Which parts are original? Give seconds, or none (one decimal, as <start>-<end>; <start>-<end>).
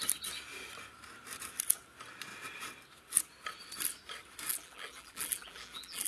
0.0-4.5